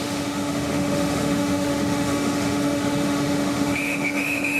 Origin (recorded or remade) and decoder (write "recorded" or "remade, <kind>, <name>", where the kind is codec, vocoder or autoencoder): remade, autoencoder, DAC-VAE